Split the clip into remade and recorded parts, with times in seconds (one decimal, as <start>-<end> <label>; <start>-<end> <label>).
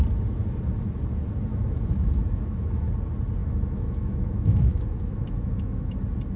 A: 0.0-1.5 recorded; 1.5-2.9 remade; 2.9-3.4 recorded; 3.4-6.0 remade; 6.0-6.4 recorded